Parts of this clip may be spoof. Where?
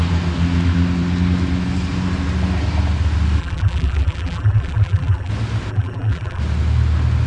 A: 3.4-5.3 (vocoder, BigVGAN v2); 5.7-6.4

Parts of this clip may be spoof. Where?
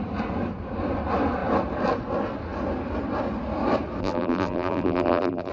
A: 4.0-5.5 (vocoder, BigVGAN v2)